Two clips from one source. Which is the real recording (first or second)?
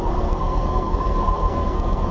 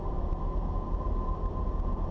second